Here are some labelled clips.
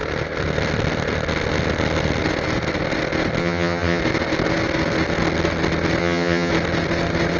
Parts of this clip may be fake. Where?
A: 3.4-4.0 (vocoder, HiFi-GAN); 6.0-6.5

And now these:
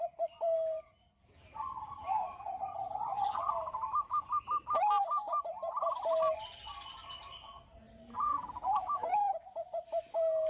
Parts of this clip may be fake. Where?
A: 2.4-3.5 (vocoder, HiFi-GAN)